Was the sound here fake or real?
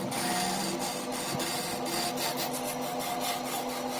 real